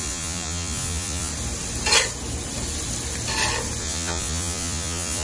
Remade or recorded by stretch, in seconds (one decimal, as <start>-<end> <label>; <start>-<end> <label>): 0.0-1.3 remade; 1.3-3.8 recorded; 3.8-5.2 remade